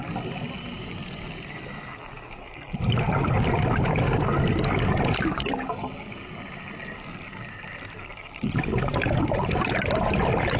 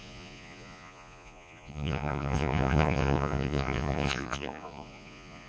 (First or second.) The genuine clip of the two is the first